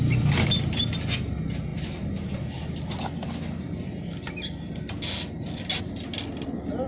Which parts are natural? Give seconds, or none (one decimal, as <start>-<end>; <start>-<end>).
0.0-6.9